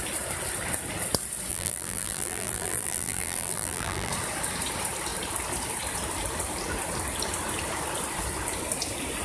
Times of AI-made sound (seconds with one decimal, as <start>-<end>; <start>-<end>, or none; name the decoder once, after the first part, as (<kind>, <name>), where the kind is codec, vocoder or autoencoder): 1.5-4.1 (vocoder, BigVGAN v2)